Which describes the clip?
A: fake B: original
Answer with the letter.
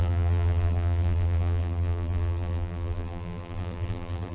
A